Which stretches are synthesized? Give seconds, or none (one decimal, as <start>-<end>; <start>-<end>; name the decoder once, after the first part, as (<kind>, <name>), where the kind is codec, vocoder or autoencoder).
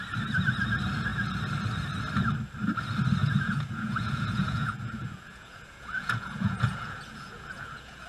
3.2-8.1 (vocoder, Vocos)